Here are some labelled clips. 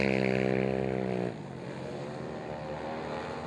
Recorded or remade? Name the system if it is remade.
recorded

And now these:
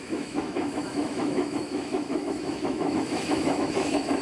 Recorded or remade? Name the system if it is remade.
remade, autoencoder, DAC-VAE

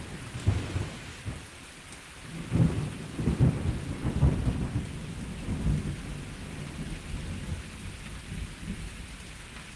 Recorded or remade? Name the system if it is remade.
recorded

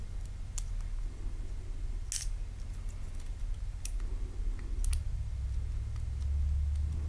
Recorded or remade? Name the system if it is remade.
recorded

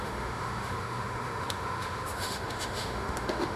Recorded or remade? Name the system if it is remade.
remade, autoencoder, DAC-VAE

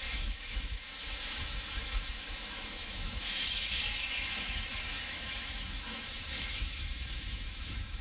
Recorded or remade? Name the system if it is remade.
remade, autoencoder, DAC-VAE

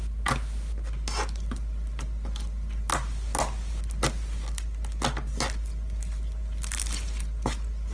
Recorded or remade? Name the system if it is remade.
recorded